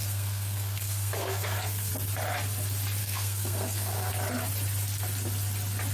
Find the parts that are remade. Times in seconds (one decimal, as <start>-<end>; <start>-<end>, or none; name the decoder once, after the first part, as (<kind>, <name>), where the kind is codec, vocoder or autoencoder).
0.0-1.9 (codec, SNAC); 3.0-4.1